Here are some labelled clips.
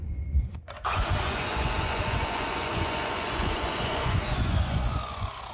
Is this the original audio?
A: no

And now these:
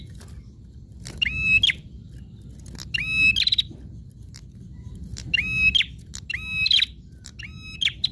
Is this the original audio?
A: yes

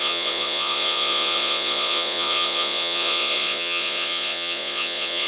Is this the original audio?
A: no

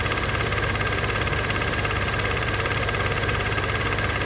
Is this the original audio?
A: no